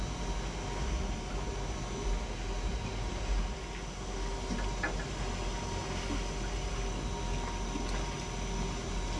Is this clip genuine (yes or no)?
yes